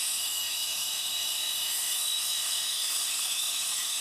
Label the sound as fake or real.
fake